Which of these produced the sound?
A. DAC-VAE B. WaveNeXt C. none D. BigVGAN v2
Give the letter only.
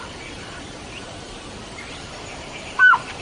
D